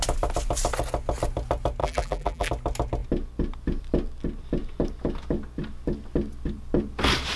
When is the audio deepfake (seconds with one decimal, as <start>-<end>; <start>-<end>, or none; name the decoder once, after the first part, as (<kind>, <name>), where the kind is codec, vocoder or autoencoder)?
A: 1.8-2.5 (vocoder, BigVGAN v2)